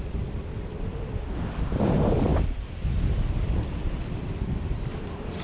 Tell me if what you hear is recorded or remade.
remade